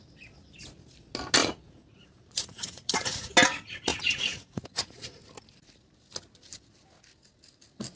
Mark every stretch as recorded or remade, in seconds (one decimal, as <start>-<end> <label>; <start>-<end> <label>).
0.0-1.4 recorded; 1.4-3.3 remade; 3.3-3.9 recorded; 3.9-5.2 remade; 5.2-8.0 recorded

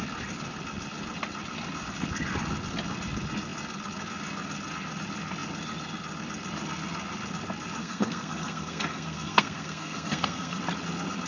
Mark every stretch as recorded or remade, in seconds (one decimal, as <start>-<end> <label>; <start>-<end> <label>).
0.0-7.8 recorded; 7.8-10.6 remade; 10.6-11.3 recorded

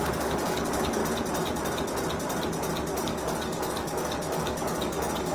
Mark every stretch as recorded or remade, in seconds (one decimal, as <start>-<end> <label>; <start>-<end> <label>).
0.0-1.0 remade; 1.0-3.0 recorded; 3.0-5.3 remade

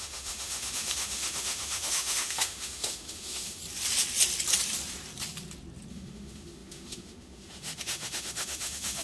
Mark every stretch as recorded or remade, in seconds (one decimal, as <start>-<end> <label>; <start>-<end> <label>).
0.0-3.6 remade; 3.6-5.9 recorded; 5.9-9.0 remade

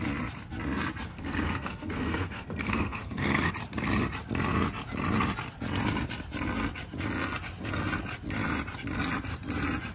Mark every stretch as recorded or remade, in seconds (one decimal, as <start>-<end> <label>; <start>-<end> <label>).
0.0-1.1 recorded; 1.1-3.5 remade; 3.5-9.9 recorded

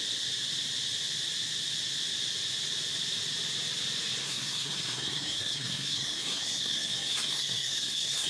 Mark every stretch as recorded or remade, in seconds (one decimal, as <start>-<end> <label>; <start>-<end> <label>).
0.0-4.2 recorded; 4.2-8.3 remade

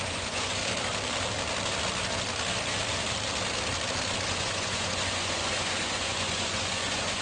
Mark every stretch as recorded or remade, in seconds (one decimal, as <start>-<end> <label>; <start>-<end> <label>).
0.0-0.6 remade; 0.6-4.3 recorded; 4.3-7.2 remade

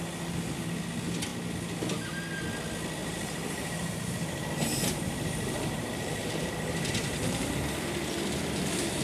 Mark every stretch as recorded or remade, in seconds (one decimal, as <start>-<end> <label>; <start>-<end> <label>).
0.0-3.0 recorded; 3.0-7.5 remade; 7.5-9.0 recorded